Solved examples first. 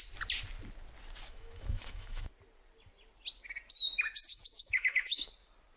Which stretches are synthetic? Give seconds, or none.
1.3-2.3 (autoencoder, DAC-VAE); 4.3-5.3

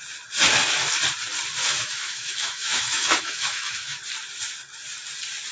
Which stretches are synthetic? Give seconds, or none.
1.6-4.0 (autoencoder, DAC-VAE)

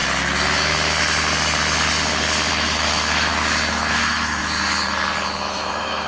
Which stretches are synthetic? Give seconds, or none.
2.5-3.3 (autoencoder, DAC-VAE); 3.9-4.4; 5.4-6.1